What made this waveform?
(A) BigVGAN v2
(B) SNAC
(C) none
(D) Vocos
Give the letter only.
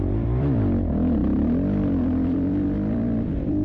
A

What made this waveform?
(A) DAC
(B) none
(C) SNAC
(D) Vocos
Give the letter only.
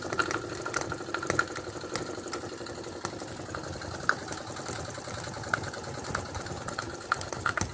B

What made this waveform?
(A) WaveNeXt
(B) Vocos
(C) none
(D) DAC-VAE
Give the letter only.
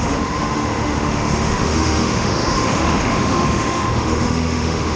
D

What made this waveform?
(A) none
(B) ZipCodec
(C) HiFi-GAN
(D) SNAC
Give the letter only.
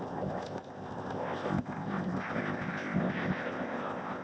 B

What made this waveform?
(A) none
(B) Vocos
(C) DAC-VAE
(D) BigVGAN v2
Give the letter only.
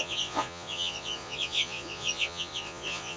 B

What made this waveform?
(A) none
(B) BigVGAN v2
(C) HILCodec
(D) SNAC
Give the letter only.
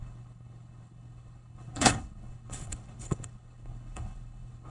C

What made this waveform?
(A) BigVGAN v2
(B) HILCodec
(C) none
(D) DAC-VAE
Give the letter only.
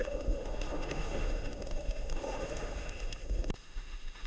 D